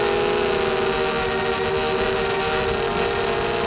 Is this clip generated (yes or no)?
no